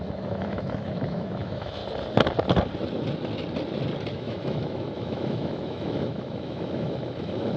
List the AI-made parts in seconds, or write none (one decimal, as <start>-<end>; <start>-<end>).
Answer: 0.0-1.8; 4.1-7.6